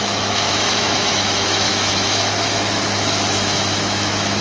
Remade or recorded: remade